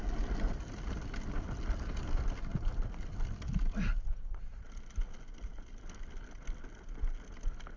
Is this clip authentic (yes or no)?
yes